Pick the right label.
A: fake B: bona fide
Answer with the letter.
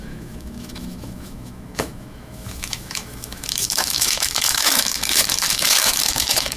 A